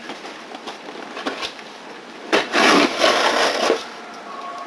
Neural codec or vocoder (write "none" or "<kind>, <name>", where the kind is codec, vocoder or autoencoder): vocoder, BigVGAN v2